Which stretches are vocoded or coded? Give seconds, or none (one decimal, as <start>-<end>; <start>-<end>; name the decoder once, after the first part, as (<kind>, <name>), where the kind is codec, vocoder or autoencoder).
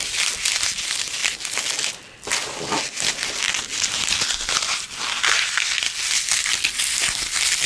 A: none